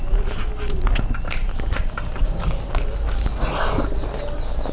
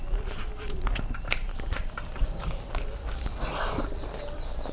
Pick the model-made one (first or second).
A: second